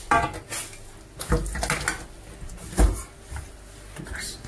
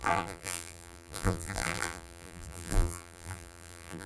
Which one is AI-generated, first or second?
second